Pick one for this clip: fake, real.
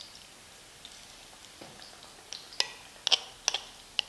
real